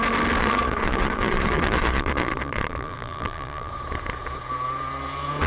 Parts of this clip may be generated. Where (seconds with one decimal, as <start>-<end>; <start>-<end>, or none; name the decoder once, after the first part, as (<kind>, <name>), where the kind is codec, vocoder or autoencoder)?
0.4-3.7 (vocoder, Vocos)